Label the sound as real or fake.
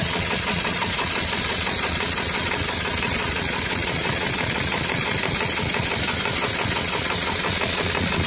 fake